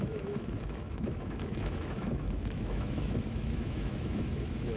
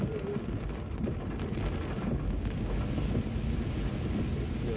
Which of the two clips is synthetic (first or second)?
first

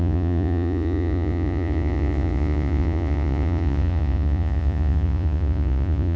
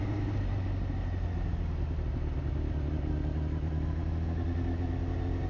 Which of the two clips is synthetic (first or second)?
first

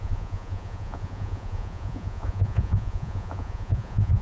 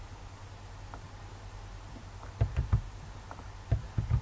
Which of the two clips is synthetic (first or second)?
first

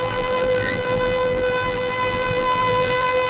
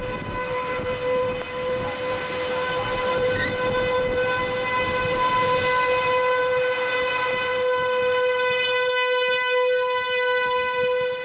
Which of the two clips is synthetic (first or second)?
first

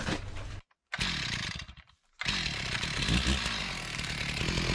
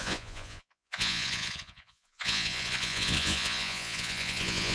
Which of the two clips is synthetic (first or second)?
second